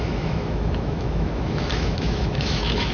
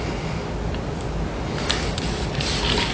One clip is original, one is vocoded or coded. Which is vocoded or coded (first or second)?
first